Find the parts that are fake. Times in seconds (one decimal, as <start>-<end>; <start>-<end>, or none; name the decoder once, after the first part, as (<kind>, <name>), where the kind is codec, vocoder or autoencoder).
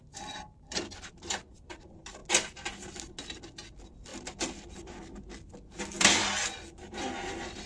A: none